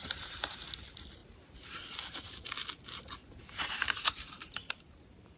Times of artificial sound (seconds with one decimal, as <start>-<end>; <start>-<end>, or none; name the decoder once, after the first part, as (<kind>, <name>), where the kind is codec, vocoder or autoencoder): 0.0-0.7 (vocoder, BigVGAN v2); 1.2-1.8; 3.2-5.4